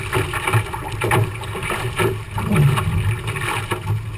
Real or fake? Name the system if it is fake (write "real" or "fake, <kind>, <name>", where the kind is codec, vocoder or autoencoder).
real